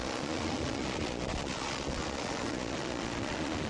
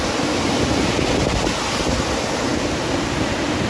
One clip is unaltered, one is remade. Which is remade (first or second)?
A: first